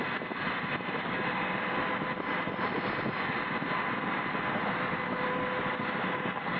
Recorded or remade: recorded